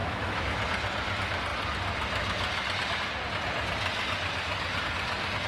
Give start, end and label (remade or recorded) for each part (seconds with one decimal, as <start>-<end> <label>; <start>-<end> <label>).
0.0-0.6 remade; 0.6-5.5 recorded